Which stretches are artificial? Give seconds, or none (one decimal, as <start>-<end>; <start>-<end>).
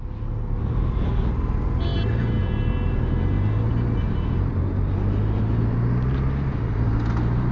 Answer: 1.9-3.1